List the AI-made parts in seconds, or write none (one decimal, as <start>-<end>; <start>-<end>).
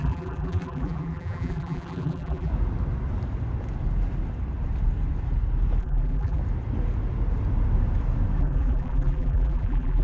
0.0-2.5; 5.8-6.4; 8.4-10.0